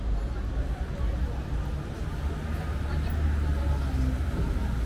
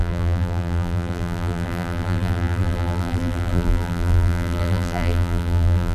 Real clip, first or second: first